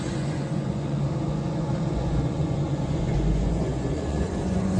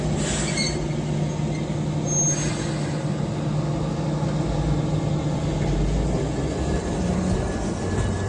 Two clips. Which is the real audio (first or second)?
second